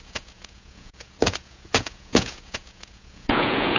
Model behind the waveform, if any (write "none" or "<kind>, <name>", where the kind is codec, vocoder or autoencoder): vocoder, Vocos